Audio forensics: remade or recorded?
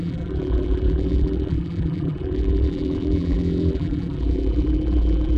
remade